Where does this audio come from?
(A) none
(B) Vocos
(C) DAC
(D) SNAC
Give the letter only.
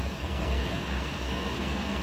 D